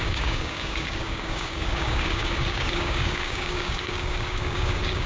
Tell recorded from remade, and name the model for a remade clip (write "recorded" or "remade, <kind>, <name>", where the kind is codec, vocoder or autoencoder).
remade, codec, DAC